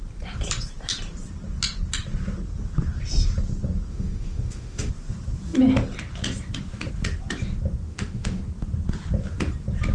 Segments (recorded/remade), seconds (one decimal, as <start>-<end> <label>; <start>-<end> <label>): 0.0-3.9 recorded; 3.9-4.9 remade; 4.9-7.9 recorded; 7.9-8.4 remade; 8.4-9.9 recorded